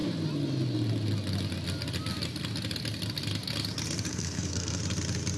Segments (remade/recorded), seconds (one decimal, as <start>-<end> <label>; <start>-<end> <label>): 0.0-4.1 recorded; 4.1-4.8 remade; 4.8-5.4 recorded